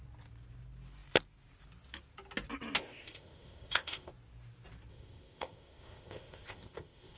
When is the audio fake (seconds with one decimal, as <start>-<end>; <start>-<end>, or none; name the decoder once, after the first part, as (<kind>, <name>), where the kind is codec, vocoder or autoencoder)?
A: 2.8-4.1 (codec, ZipCodec); 4.9-7.2